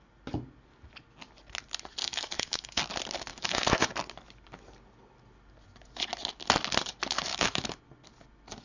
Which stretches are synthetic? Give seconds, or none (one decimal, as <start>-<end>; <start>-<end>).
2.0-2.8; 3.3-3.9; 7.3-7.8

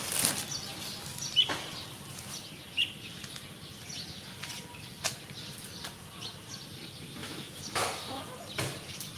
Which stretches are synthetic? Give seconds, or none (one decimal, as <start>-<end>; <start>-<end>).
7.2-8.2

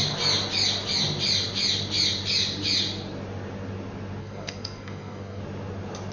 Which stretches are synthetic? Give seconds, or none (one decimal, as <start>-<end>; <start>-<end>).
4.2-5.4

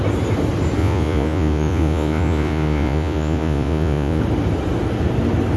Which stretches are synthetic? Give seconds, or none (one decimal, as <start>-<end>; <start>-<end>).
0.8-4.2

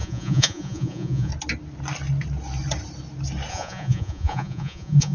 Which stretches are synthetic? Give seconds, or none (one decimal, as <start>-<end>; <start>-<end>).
0.0-1.3; 3.5-5.1

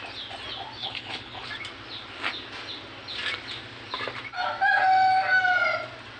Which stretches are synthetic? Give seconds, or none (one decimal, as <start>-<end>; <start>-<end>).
0.8-1.5